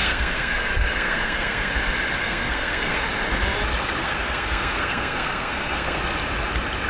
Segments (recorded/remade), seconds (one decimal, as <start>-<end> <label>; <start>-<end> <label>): 0.0-1.7 remade; 1.7-2.2 recorded; 2.2-3.0 remade; 3.0-4.0 recorded; 4.0-6.0 remade; 6.0-6.9 recorded